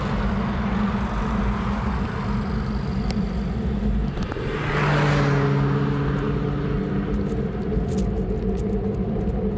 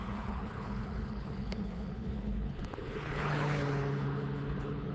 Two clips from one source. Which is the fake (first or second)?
second